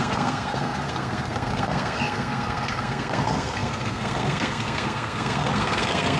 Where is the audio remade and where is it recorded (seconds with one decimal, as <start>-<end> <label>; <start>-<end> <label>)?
0.0-6.2 remade